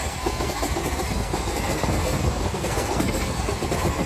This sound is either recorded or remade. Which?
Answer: remade